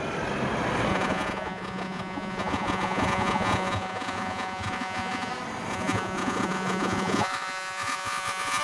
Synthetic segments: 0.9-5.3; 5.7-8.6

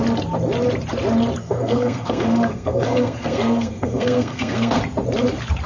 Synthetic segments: 1.4-4.8